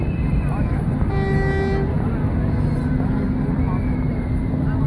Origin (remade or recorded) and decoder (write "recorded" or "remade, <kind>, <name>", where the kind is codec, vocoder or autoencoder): recorded